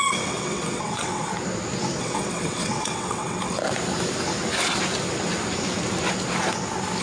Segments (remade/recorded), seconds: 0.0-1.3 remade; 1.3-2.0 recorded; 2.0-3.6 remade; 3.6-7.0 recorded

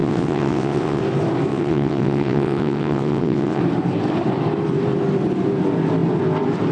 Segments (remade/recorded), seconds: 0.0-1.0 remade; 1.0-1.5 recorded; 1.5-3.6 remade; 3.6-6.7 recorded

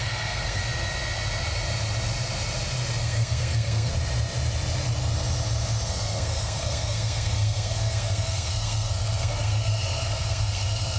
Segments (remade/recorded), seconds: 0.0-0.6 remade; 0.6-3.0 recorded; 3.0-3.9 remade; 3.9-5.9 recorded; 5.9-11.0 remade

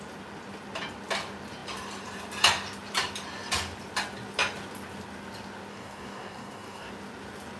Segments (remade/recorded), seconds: 0.0-5.7 recorded; 5.7-6.9 remade; 6.9-7.6 recorded